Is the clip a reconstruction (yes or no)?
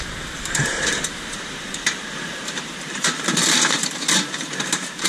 yes